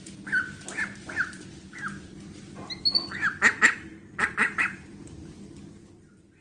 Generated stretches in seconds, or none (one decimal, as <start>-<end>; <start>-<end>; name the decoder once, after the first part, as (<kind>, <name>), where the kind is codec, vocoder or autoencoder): 3.9-4.6 (vocoder, BigVGAN v2)